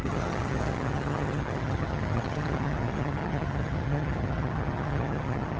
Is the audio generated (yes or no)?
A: yes